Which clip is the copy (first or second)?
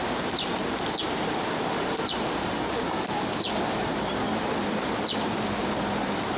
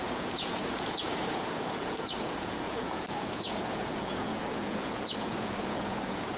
second